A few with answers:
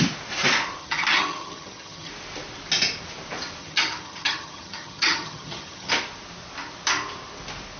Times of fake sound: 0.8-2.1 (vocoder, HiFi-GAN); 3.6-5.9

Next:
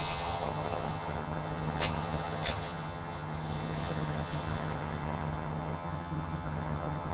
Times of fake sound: 0.0-7.1 (vocoder, HiFi-GAN)

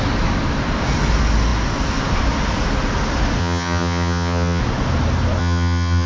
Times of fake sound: 3.4-4.6 (vocoder, HiFi-GAN); 5.4-6.1

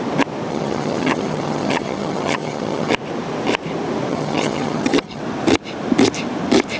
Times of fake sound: 0.5-2.9 (vocoder, HiFi-GAN); 4.1-5.2

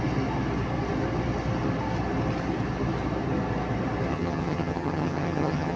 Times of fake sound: 4.1-5.8 (vocoder, HiFi-GAN)

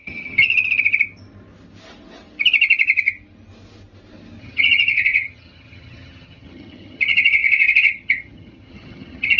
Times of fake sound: 0.0-0.5 (vocoder, HiFi-GAN); 4.4-9.4

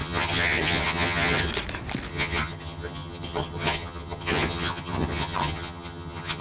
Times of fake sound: 0.0-1.5 (vocoder, HiFi-GAN); 2.1-6.4

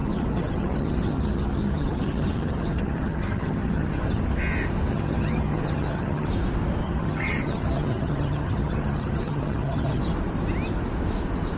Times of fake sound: 0.0-4.2 (vocoder, HiFi-GAN); 4.9-6.3; 6.8-10.0